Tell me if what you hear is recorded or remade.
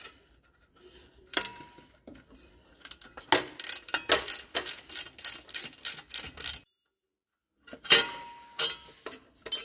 recorded